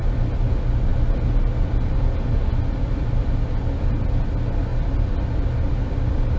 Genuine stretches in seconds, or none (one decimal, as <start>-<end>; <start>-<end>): 0.0-6.4